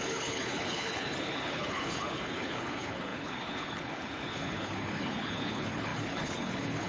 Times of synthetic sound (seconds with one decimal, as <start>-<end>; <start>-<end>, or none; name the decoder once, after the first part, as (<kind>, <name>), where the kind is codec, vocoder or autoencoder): 0.0-6.9 (codec, HILCodec)